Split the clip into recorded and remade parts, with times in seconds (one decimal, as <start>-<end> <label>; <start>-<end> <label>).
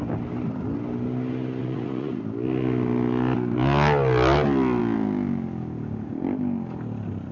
0.0-1.6 recorded; 1.6-2.2 remade; 2.2-7.3 recorded